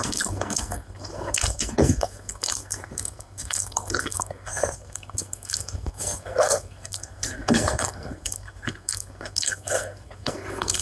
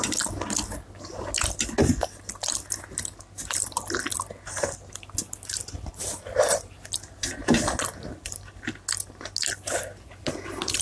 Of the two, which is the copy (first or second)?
first